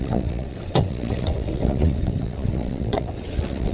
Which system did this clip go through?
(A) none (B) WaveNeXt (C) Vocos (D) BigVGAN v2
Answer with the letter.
B